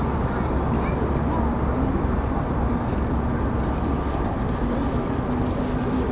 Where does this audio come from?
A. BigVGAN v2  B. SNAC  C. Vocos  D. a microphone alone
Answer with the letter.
D